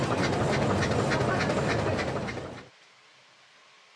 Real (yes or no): yes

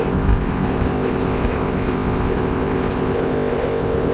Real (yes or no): no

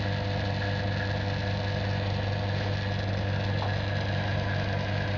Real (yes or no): yes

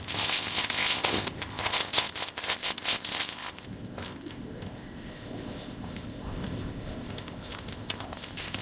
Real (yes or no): no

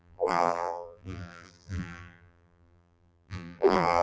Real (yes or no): no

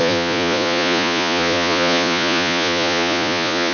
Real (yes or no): no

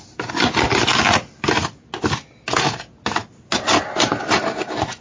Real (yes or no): yes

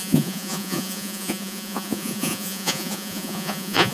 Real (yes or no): no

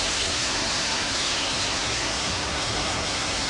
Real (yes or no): no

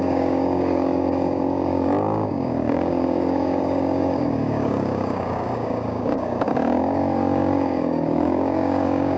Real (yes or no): no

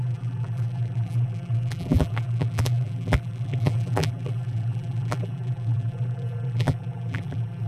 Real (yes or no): no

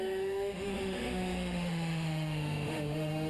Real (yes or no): no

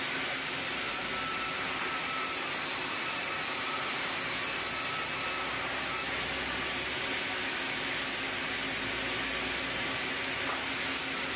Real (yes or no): yes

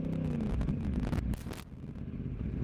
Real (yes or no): yes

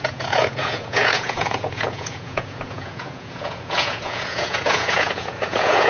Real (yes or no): no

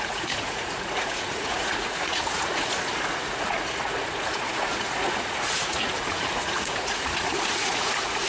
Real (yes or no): no